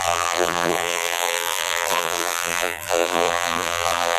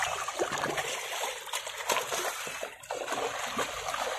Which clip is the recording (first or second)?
second